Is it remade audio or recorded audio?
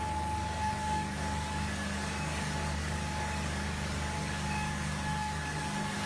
remade